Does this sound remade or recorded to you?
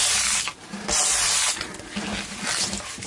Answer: recorded